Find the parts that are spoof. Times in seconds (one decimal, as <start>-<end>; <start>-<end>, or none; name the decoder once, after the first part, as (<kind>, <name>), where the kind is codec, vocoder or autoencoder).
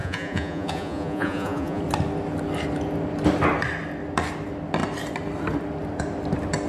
0.0-1.8 (vocoder, Vocos)